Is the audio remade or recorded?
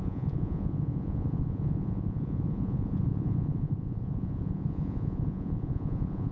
remade